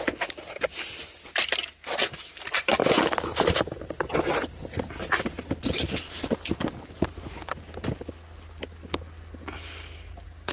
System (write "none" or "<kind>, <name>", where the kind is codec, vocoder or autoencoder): none